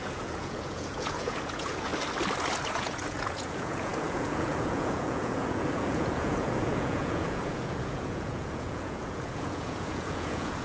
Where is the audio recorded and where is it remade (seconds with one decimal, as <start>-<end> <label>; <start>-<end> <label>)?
0.0-1.9 remade; 1.9-2.7 recorded; 2.7-10.6 remade